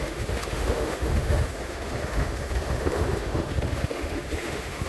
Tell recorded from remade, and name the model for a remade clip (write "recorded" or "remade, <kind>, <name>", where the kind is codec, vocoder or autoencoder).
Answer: remade, autoencoder, DAC-VAE